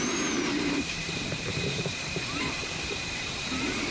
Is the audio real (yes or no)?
no